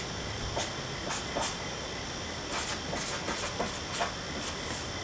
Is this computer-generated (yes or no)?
no